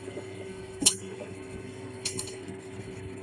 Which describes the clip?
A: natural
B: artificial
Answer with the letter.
B